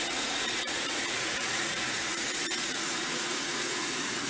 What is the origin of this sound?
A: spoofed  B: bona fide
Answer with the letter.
A